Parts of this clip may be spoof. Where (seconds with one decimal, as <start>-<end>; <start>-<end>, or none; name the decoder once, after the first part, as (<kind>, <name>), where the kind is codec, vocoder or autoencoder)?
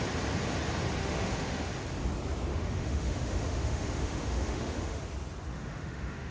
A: 1.0-1.7 (autoencoder, DAC-VAE); 2.5-5.0; 5.5-6.3